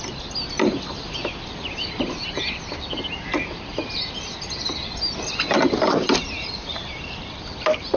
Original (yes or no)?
no